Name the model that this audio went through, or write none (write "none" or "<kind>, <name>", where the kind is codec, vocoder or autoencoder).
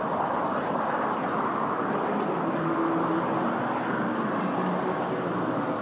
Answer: none